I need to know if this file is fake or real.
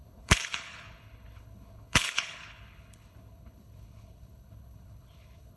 fake